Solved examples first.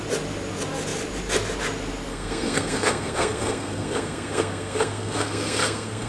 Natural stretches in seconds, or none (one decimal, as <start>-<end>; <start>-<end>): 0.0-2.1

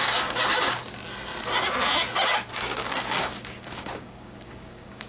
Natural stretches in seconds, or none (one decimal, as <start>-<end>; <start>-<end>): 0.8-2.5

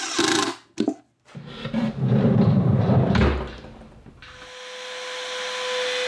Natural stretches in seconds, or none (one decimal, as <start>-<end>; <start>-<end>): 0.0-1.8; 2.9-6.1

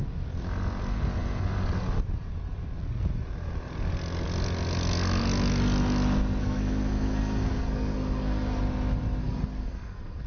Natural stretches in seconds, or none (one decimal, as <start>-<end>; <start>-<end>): 0.0-6.4; 8.6-9.2

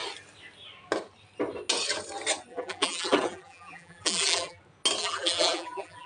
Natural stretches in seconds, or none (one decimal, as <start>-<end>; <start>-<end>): 0.0-2.5; 4.6-5.0

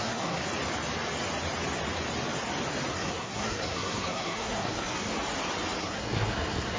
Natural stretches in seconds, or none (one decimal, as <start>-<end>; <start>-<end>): 0.4-2.9; 5.1-5.8

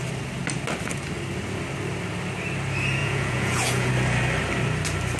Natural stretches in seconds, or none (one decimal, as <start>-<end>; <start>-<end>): 0.0-3.0; 3.9-5.2